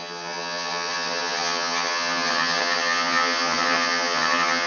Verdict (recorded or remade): remade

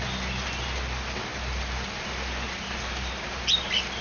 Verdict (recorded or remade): recorded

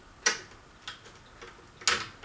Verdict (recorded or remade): recorded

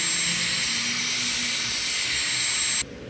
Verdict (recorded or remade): recorded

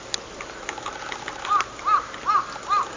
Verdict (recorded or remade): recorded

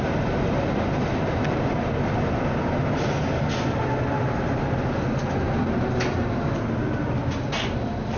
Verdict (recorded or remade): recorded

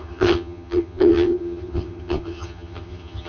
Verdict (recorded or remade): remade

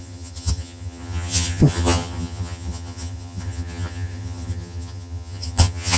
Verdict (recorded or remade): remade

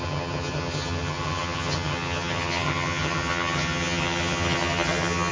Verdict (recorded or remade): remade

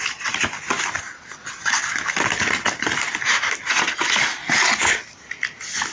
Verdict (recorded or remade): recorded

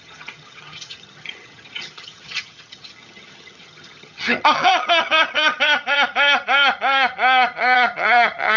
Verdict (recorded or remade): remade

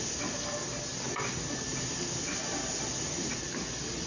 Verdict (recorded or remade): recorded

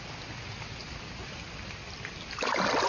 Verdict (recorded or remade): recorded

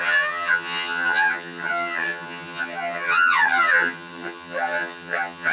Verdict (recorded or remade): remade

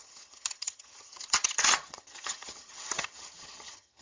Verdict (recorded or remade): remade